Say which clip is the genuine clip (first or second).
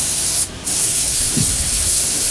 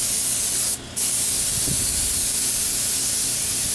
second